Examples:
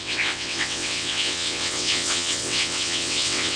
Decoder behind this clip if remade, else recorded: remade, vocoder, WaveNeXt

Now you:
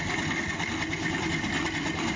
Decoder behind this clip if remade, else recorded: recorded